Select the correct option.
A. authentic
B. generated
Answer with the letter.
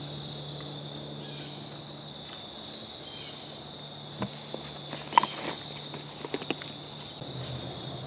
A